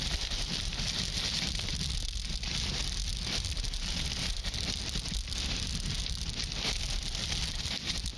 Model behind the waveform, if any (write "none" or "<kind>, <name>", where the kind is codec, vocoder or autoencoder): none